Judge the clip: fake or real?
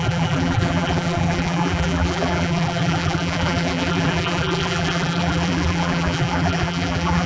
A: fake